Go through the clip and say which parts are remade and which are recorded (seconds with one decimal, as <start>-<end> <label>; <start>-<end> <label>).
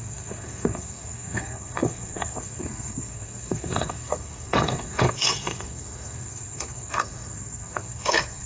0.0-8.5 remade